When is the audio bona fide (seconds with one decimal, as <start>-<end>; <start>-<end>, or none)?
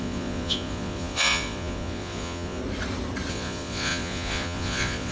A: 2.6-3.3